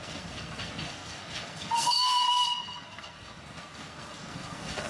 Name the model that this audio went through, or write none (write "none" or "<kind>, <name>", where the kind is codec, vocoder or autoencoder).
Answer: codec, SNAC